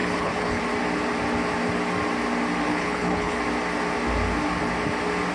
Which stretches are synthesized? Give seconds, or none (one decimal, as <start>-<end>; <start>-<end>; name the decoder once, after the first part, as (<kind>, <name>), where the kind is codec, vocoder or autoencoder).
0.0-0.6 (codec, HILCodec); 2.7-3.4